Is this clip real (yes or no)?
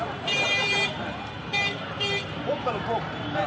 no